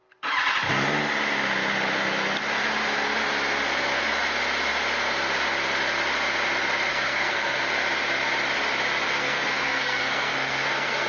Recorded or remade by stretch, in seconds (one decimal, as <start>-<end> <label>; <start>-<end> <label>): 0.0-6.9 recorded; 6.9-7.6 remade; 7.6-9.2 recorded; 9.2-11.1 remade